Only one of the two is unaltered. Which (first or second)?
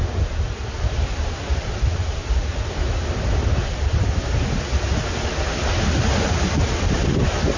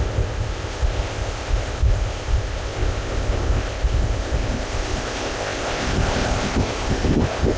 first